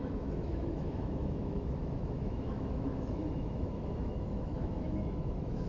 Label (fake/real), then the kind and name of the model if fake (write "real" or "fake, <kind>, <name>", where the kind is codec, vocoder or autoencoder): fake, autoencoder, DAC-VAE